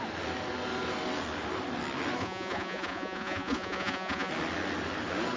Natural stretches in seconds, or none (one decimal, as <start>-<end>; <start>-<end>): 0.0-2.2; 4.3-5.4